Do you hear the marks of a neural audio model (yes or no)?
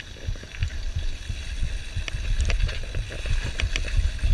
no